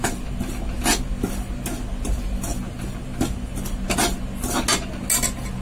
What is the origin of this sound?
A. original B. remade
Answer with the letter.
A